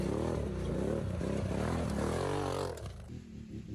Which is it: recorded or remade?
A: recorded